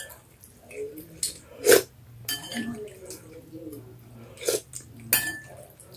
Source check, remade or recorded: recorded